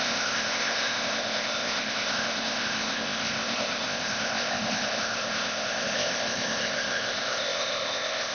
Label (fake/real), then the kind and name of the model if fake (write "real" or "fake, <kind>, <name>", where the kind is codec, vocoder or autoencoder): fake, codec, ZipCodec